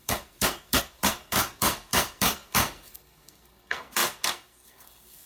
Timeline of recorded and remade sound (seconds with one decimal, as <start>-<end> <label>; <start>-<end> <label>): 0.0-5.3 remade